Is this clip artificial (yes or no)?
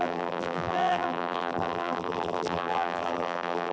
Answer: yes